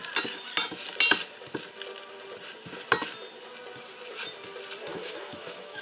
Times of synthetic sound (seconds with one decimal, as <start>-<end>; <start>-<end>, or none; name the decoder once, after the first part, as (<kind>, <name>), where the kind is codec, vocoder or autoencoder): 4.9-5.8 (autoencoder, DAC-VAE)